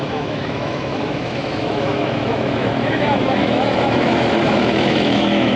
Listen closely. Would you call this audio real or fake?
fake